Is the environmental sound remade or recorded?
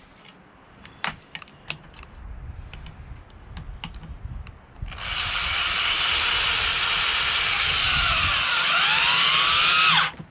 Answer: recorded